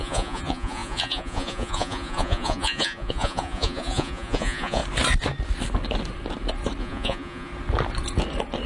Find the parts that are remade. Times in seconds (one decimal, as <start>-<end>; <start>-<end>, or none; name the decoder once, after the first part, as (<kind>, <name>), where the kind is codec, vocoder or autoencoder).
0.0-4.8 (vocoder, Vocos); 6.8-7.5